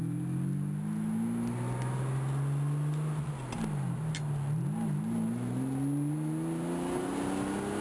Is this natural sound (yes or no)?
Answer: yes